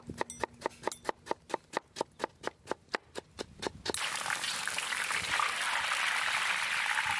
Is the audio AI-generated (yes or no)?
no